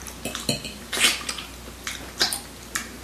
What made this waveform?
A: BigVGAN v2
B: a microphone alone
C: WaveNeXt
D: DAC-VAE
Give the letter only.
B